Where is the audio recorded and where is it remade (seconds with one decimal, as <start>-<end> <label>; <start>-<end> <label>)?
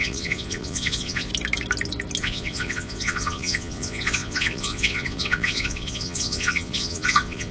0.0-1.3 remade; 1.3-2.2 recorded; 2.2-7.5 remade